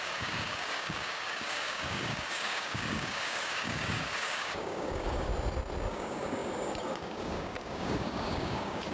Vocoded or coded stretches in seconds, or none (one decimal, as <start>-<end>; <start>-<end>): 0.0-5.3; 5.9-8.9